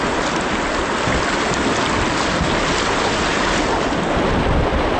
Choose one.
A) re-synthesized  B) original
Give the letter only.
B